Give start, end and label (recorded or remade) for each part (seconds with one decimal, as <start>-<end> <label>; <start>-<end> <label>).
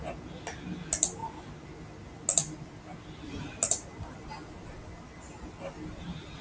0.0-6.4 recorded